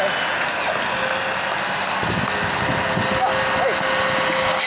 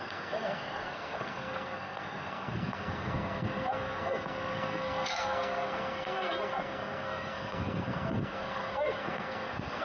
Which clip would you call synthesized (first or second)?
second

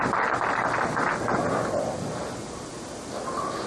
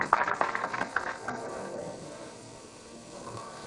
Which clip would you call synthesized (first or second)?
second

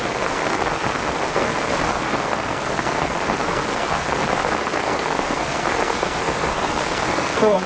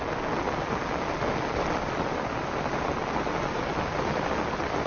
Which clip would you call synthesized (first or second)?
first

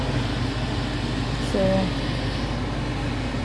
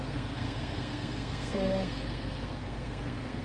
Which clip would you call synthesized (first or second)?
second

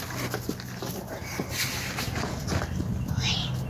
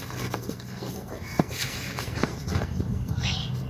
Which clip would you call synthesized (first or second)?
second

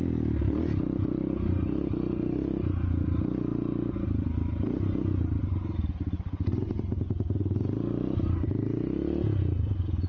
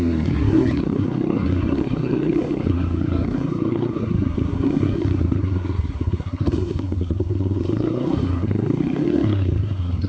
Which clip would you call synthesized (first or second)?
second